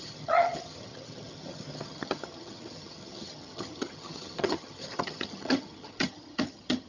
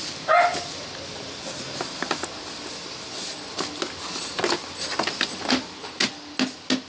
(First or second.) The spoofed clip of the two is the first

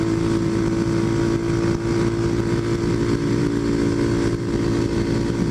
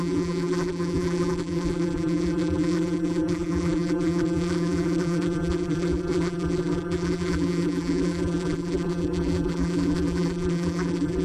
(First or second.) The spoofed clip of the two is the second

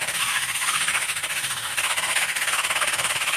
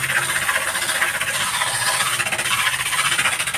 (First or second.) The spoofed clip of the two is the first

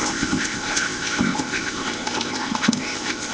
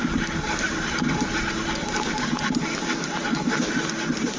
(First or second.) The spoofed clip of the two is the first